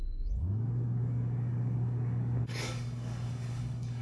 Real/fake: fake